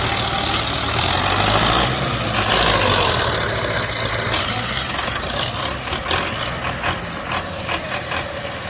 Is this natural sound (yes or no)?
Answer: yes